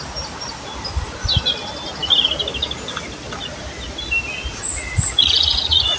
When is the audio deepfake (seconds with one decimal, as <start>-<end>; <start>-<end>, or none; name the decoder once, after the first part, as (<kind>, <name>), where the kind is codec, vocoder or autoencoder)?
4.5-6.0 (vocoder, Vocos)